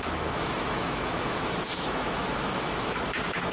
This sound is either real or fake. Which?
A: fake